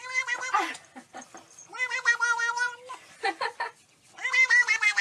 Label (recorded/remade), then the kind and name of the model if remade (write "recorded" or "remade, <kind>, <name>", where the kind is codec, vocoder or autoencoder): recorded